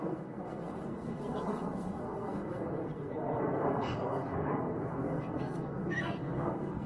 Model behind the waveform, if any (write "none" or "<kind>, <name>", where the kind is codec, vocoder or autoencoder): codec, SNAC